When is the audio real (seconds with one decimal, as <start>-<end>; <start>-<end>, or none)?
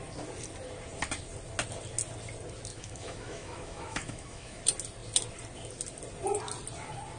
0.0-2.7; 4.6-7.2